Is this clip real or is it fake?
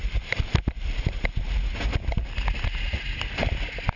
real